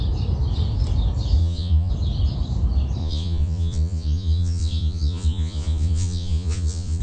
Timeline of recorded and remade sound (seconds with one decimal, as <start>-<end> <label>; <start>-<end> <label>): 0.0-1.4 recorded; 1.4-1.9 remade; 1.9-3.0 recorded; 3.0-7.0 remade